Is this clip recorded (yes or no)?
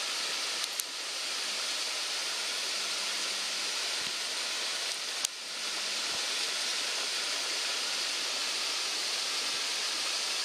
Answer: yes